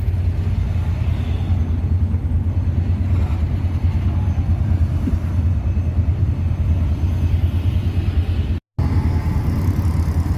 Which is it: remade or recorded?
recorded